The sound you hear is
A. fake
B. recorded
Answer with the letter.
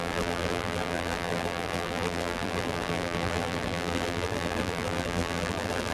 A